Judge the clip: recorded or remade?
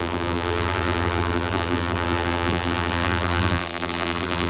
remade